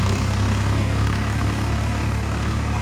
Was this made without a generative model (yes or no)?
no